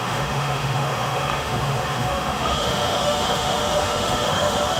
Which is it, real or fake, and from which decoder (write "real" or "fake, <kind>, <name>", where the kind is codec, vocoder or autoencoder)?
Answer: fake, autoencoder, DAC-VAE